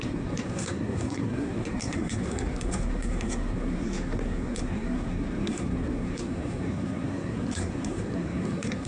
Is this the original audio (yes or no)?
no